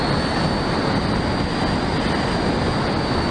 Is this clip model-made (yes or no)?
no